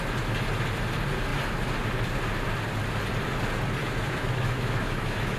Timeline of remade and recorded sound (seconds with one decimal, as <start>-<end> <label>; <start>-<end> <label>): 0.0-3.8 recorded; 3.8-5.4 remade